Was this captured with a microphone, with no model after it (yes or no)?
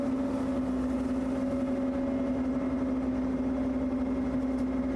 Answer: yes